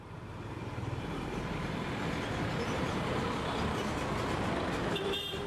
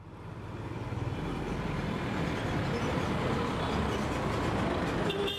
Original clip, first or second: second